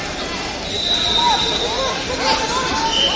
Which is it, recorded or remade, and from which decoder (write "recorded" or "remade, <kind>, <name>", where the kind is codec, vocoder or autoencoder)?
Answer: recorded